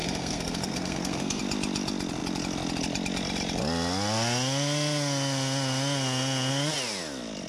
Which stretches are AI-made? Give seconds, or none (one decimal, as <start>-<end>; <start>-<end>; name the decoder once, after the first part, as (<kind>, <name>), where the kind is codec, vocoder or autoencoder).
0.0-1.4 (codec, SNAC)